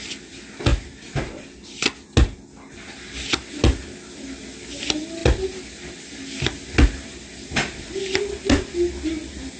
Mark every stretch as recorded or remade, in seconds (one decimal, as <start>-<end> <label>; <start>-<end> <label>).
0.0-9.6 recorded